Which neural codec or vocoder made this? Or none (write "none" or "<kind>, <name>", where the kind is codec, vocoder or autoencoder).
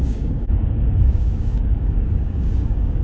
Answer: codec, DAC